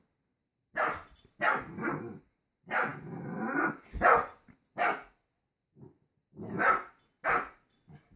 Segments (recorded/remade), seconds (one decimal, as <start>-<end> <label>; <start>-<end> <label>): 0.0-8.2 recorded